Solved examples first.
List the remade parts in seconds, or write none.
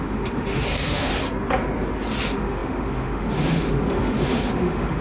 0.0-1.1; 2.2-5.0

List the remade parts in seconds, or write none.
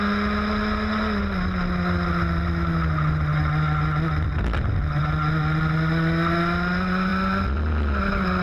none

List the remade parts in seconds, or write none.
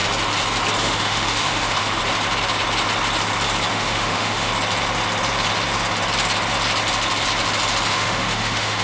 0.8-2.0; 3.7-4.5; 7.9-8.8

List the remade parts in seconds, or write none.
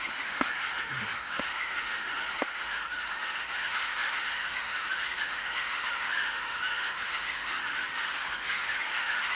0.0-9.4